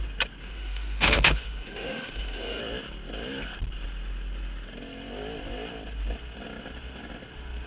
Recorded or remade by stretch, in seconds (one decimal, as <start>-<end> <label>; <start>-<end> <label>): 0.0-0.4 recorded; 0.4-2.6 remade; 2.6-7.7 recorded